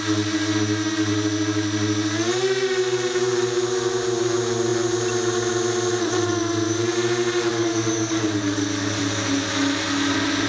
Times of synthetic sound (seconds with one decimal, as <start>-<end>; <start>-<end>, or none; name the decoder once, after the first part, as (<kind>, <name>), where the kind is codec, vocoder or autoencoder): 7.5-9.0 (codec, DAC)